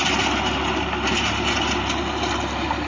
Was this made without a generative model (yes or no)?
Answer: yes